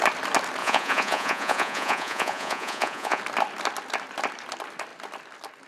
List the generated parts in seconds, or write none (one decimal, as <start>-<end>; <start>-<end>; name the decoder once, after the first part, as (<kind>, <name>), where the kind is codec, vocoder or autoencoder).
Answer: 0.6-3.2 (vocoder, Vocos)

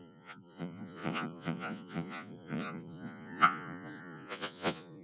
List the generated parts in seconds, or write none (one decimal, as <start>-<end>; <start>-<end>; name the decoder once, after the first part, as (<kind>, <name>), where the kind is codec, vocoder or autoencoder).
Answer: 0.0-5.0 (vocoder, Vocos)

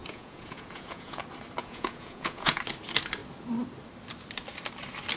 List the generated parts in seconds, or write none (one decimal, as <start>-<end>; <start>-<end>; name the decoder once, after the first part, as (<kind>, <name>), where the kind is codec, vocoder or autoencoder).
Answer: 0.0-1.2 (vocoder, Vocos); 1.6-2.6

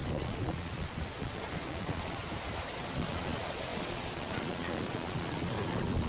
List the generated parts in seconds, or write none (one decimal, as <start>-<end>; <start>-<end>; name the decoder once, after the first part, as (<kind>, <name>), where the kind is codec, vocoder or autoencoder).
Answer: 0.0-2.2 (vocoder, Vocos); 2.7-6.1

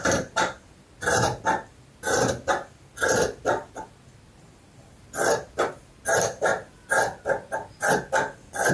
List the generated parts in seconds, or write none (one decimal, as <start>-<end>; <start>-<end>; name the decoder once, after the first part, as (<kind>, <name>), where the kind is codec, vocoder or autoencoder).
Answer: none

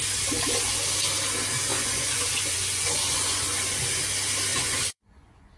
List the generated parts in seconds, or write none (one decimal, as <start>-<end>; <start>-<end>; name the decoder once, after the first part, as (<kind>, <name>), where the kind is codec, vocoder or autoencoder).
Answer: 1.7-4.0 (vocoder, Vocos); 4.5-5.6

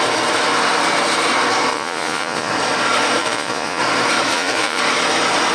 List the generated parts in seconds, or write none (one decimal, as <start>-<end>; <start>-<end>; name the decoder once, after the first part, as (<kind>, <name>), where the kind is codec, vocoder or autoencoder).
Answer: 1.7-2.5 (vocoder, Vocos); 3.2-3.8; 4.3-4.8